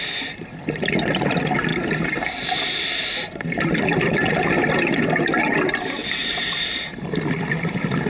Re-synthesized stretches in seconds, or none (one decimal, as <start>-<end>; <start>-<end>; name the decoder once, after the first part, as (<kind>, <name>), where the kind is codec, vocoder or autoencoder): none